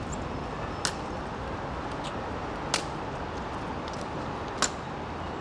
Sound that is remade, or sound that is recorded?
recorded